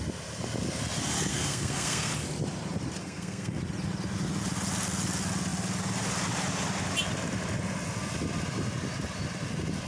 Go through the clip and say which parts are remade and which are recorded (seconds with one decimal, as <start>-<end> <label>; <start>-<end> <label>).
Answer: 0.0-1.3 recorded; 1.3-2.1 remade; 2.1-3.0 recorded; 3.0-3.6 remade; 3.6-9.9 recorded